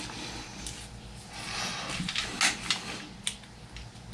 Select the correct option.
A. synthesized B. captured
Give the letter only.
B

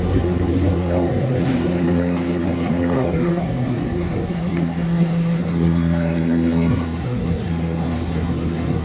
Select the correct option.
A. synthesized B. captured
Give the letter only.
A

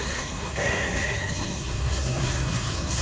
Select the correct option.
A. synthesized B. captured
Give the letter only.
A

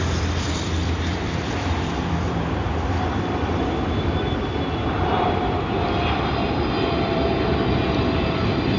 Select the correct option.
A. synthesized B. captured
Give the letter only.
A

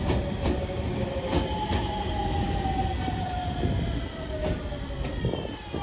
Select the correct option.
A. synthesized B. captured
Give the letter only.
B